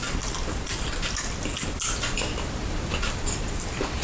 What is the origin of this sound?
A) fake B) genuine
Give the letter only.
B